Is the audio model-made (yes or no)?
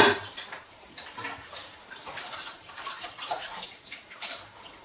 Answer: yes